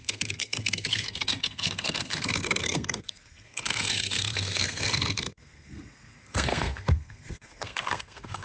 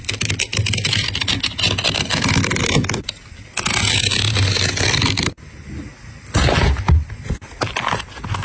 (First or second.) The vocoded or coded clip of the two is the first